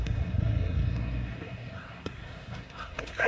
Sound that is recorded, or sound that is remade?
remade